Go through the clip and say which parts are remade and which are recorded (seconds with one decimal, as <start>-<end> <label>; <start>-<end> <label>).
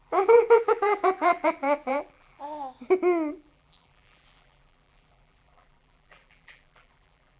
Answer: 0.0-2.4 remade; 2.4-3.3 recorded; 3.3-7.4 remade